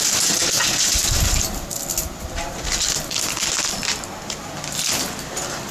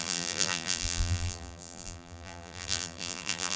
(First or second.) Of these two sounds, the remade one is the second